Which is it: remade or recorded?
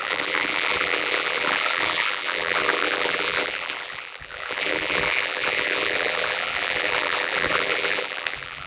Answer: remade